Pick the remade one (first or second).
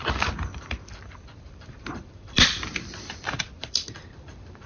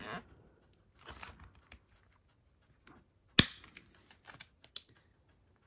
first